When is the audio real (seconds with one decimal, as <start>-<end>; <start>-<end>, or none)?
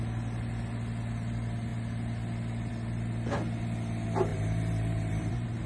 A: 0.0-4.3; 5.3-5.7